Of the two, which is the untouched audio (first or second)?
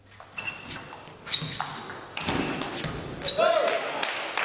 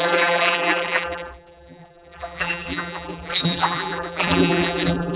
first